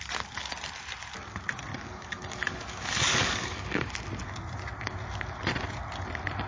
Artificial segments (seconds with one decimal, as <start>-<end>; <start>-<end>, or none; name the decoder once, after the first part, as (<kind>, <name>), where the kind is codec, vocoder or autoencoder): 1.7-3.9 (codec, DAC)